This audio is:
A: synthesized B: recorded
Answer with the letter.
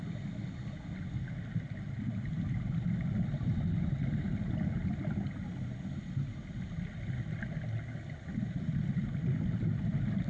B